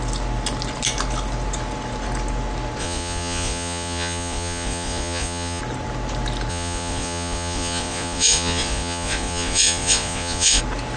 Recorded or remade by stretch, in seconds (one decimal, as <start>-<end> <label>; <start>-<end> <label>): 0.0-2.8 recorded; 2.8-5.6 remade; 5.6-6.5 recorded; 6.5-10.6 remade; 10.6-11.0 recorded